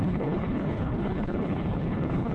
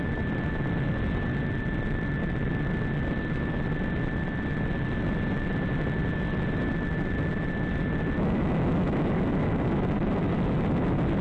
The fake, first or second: first